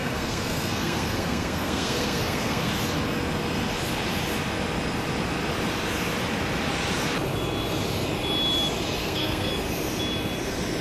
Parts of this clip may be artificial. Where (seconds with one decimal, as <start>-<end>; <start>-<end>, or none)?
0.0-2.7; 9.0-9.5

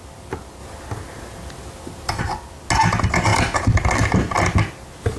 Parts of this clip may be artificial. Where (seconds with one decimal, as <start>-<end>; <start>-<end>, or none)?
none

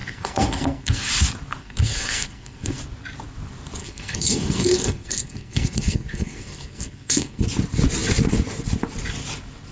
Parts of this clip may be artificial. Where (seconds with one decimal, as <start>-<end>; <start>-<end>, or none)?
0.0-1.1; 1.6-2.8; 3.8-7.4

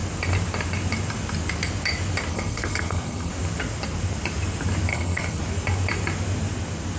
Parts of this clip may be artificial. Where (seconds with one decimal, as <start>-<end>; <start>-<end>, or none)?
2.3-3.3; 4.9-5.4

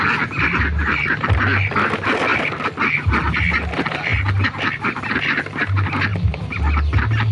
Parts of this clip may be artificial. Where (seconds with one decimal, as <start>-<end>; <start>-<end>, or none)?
none

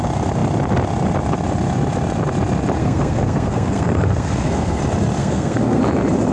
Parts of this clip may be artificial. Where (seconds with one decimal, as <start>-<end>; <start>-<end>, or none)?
2.8-4.8; 5.2-5.8

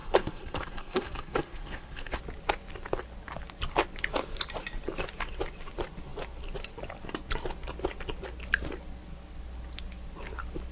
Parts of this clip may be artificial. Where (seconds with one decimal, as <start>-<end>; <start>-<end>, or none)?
0.0-2.2